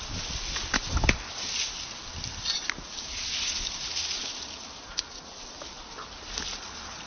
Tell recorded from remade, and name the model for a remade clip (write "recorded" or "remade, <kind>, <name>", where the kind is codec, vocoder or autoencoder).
recorded